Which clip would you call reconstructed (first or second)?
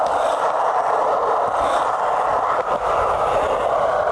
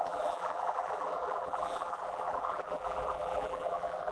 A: second